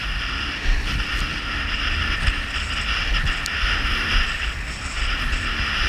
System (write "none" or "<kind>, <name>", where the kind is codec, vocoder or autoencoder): none